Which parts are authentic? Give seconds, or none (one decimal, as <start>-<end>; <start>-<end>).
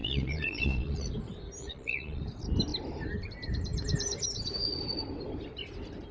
1.1-1.6; 2.2-6.1